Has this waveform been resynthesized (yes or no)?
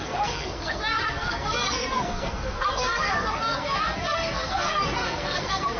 yes